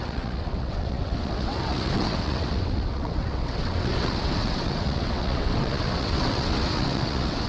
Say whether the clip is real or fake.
fake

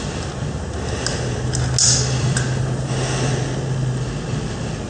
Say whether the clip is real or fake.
real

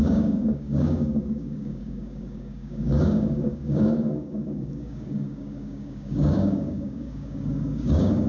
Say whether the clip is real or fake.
fake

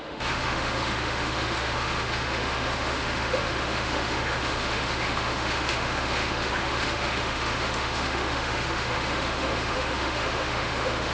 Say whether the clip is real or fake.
fake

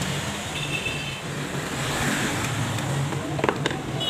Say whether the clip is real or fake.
real